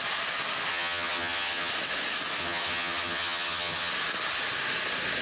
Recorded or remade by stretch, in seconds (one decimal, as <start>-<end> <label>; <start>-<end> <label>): 0.0-0.7 recorded; 0.7-1.7 remade; 1.7-2.4 recorded; 2.4-3.9 remade; 3.9-5.2 recorded